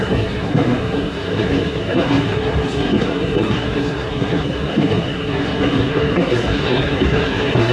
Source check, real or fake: fake